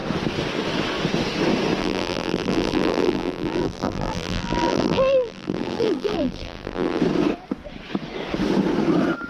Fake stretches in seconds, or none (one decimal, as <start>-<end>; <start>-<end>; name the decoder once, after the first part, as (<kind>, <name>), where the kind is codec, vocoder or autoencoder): 1.8-7.0 (vocoder, BigVGAN v2)